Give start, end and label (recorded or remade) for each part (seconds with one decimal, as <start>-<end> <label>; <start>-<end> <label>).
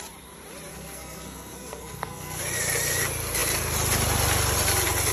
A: 0.0-0.7 recorded; 0.7-2.4 remade; 2.4-5.1 recorded